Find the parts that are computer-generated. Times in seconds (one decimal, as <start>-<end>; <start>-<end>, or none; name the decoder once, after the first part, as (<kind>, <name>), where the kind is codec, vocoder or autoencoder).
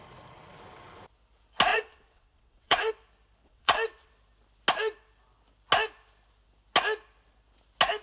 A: 1.7-2.9 (vocoder, WaveNeXt); 3.4-4.1